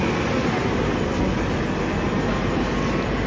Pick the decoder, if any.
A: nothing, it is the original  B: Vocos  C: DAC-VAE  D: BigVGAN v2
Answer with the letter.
A